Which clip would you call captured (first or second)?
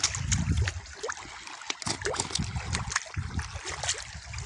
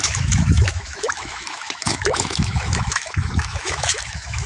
first